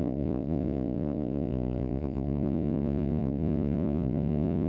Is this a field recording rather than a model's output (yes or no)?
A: no